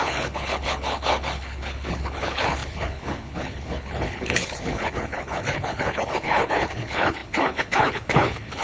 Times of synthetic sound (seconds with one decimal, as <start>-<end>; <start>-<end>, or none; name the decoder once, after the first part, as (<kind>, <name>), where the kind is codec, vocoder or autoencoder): 0.0-8.6 (codec, HILCodec)